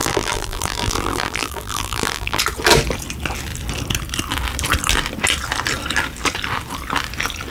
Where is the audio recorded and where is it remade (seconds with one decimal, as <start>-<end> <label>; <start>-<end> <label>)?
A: 0.0-2.4 remade; 2.4-7.5 recorded